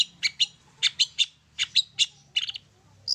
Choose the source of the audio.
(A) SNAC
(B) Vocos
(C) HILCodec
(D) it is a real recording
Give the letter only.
D